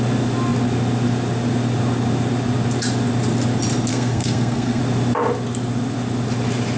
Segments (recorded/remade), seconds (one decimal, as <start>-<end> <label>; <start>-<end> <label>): 0.0-3.9 recorded; 3.9-4.8 remade; 4.8-6.8 recorded